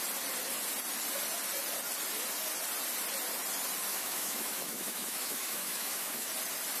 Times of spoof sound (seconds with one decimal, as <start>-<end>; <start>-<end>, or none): 3.9-6.3